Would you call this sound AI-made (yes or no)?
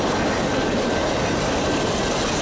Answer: no